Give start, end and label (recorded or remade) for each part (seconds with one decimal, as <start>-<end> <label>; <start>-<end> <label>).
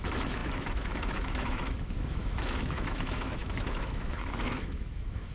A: 0.0-5.3 remade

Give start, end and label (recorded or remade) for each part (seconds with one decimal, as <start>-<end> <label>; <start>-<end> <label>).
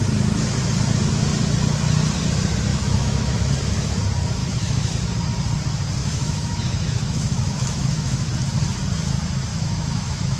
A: 0.0-2.7 recorded; 2.7-3.5 remade; 3.5-4.4 recorded; 4.4-4.9 remade; 4.9-6.0 recorded; 6.0-8.3 remade; 8.3-9.5 recorded; 9.5-10.4 remade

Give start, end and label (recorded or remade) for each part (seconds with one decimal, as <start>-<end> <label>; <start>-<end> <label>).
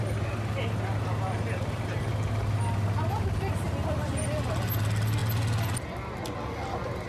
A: 0.0-7.1 recorded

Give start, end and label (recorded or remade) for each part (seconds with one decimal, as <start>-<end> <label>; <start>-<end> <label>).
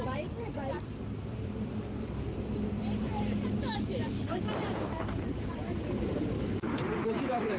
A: 0.0-7.6 remade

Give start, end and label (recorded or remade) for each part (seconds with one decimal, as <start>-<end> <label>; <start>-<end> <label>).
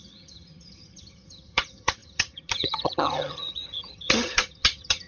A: 0.0-5.1 remade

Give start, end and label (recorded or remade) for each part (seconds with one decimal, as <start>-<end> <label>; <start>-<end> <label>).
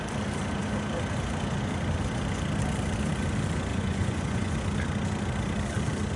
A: 0.0-3.7 recorded; 3.7-4.6 remade; 4.6-6.2 recorded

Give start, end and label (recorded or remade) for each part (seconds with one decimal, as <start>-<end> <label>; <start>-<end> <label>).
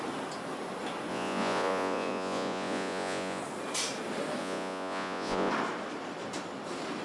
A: 0.0-1.1 recorded; 1.1-3.4 remade; 3.4-4.4 recorded; 4.4-5.5 remade; 5.5-7.0 recorded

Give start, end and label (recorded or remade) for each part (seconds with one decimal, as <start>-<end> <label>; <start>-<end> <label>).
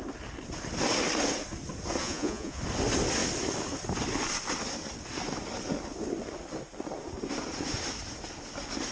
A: 0.0-2.0 recorded; 2.0-2.6 remade; 2.6-8.9 recorded